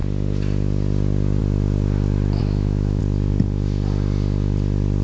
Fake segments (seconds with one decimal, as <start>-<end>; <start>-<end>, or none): 2.4-3.0